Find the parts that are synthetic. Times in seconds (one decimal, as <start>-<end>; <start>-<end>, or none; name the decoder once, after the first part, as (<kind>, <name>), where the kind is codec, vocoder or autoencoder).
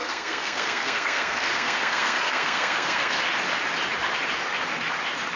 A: 0.0-3.2 (codec, SNAC)